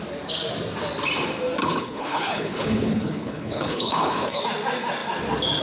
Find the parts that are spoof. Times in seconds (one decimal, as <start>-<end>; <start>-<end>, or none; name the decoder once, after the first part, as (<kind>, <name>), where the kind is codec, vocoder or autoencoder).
1.6-4.4 (codec, HILCodec)